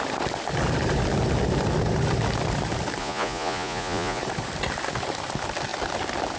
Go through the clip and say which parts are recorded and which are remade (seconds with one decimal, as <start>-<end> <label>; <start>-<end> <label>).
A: 0.0-3.0 recorded; 3.0-4.2 remade; 4.2-6.4 recorded